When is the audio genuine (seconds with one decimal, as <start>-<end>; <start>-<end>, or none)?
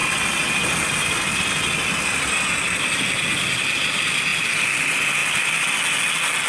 0.0-6.5